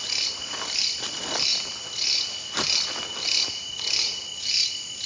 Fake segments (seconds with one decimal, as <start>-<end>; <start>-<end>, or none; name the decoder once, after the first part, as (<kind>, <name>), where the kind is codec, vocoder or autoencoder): none